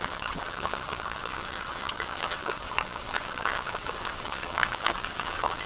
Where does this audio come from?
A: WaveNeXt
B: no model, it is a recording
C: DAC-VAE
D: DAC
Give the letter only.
A